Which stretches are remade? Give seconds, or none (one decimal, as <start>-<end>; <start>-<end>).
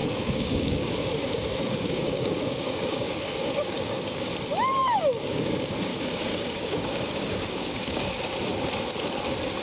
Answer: 0.0-4.3; 4.8-5.5; 5.9-8.2